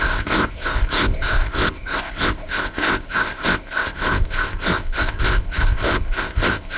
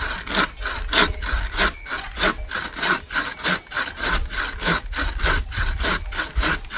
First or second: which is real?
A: second